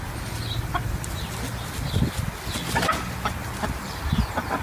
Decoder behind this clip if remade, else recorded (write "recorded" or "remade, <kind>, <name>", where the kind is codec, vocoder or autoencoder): recorded